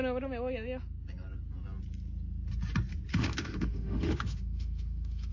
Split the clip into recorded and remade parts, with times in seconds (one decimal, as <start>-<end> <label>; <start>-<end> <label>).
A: 0.0-3.1 recorded; 3.1-5.3 remade